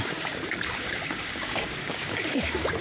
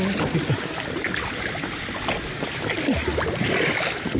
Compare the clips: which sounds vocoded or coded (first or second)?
first